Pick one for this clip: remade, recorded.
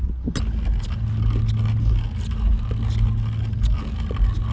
recorded